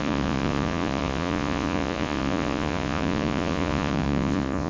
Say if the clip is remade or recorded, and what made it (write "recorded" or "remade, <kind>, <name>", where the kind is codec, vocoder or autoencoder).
remade, vocoder, Vocos